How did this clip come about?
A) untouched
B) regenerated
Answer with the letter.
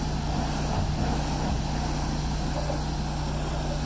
A